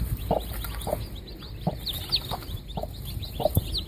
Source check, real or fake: real